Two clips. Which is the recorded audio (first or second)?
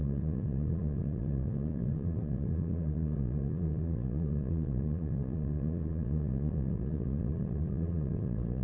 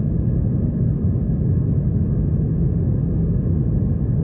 second